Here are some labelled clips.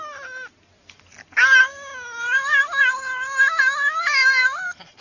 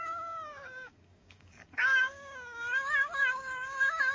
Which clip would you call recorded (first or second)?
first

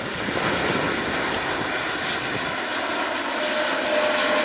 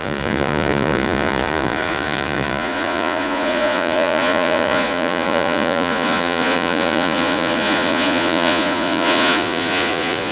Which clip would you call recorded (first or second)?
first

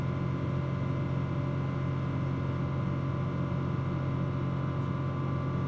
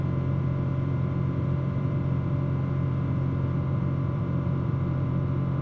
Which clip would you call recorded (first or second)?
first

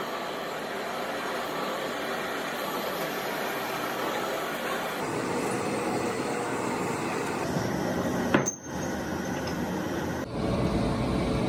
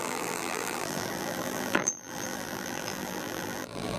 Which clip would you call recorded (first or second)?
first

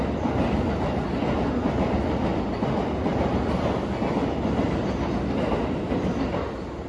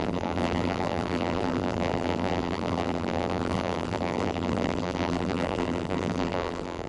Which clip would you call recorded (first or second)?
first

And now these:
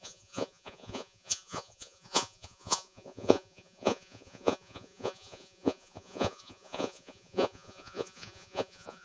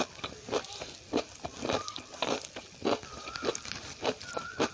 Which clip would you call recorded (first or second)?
second